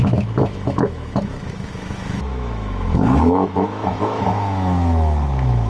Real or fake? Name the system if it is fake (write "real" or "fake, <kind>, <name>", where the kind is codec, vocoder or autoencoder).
fake, autoencoder, DAC-VAE